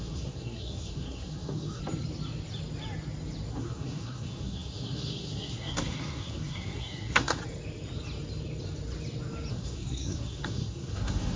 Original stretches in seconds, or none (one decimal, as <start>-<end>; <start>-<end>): 1.8-3.5; 7.4-9.5